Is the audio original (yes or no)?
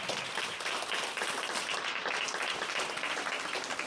yes